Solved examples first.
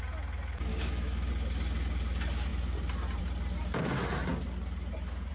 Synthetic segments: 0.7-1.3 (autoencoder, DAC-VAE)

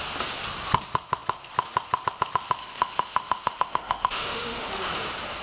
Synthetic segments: 2.6-4.7 (autoencoder, DAC-VAE)

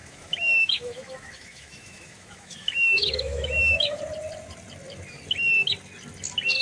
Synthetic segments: 0.0-4.0 (autoencoder, DAC-VAE)

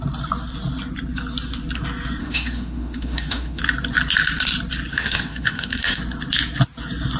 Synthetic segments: 2.2-3.6 (autoencoder, DAC-VAE); 4.9-6.0

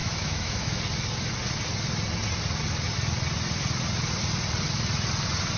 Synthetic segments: 0.0-0.8 (autoencoder, DAC-VAE)